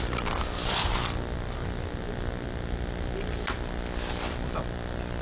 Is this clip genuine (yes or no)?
yes